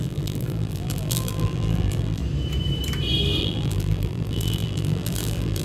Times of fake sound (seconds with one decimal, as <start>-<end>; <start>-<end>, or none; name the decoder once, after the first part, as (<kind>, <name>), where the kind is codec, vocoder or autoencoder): 0.0-2.2 (vocoder, BigVGAN v2); 3.4-5.6